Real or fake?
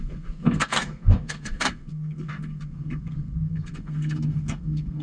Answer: fake